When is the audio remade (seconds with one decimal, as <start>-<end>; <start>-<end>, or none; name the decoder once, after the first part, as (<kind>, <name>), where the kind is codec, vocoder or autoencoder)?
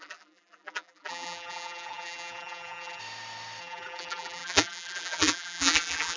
0.0-3.0 (vocoder, BigVGAN v2); 3.6-6.2